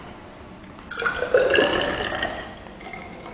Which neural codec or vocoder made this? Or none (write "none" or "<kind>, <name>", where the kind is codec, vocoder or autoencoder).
none